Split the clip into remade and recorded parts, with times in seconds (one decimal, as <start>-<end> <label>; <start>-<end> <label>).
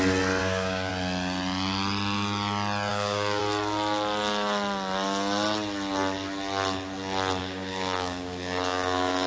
0.0-0.4 recorded; 0.4-0.9 remade; 0.9-2.9 recorded; 2.9-3.4 remade; 3.4-7.4 recorded; 7.4-9.3 remade